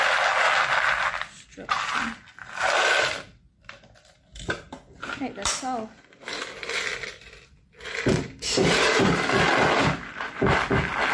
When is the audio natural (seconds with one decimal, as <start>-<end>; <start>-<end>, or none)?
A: 0.0-6.9; 9.5-11.1